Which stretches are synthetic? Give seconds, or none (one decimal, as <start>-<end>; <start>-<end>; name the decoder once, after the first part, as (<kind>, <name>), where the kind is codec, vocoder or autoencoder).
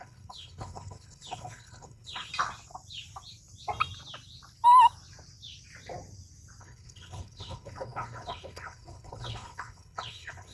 0.0-2.3 (codec, HILCodec); 6.6-10.5